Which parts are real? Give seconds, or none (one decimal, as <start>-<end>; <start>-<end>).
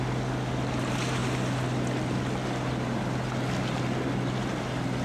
0.0-5.0